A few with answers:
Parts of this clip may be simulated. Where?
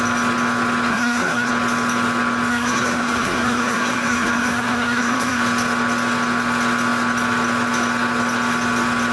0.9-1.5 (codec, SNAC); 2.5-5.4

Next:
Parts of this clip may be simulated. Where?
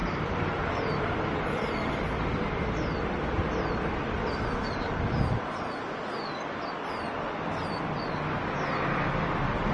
0.0-4.5 (vocoder, BigVGAN v2)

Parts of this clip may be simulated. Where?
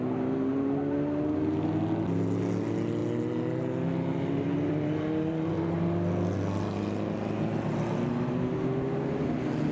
none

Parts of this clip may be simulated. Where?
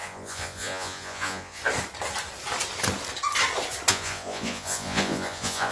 0.0-1.6 (vocoder, Vocos); 3.9-5.7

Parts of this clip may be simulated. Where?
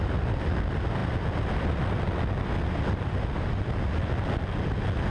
none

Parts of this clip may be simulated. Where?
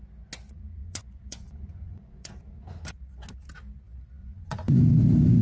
0.8-2.3 (vocoder, Vocos); 4.2-4.8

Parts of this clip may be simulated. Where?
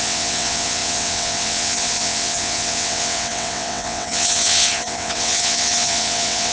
0.0-6.5 (vocoder, WaveNeXt)